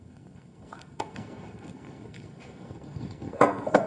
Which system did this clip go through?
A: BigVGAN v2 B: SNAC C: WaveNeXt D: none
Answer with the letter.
B